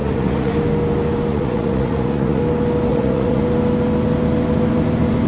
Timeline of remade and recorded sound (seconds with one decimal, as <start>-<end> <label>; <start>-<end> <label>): 0.0-0.5 remade; 0.5-1.3 recorded; 1.3-2.4 remade; 2.4-2.9 recorded; 2.9-3.4 remade; 3.4-5.3 recorded